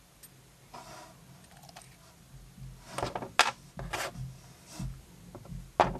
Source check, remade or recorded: recorded